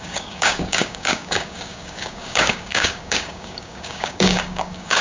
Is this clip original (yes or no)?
no